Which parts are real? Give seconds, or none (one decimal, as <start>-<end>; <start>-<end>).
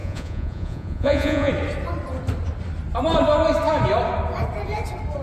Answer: 1.5-5.2